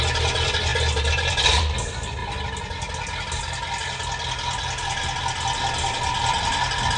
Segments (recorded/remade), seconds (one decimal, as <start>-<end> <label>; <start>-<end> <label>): 0.0-7.0 recorded